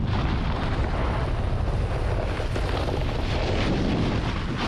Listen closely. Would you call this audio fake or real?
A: real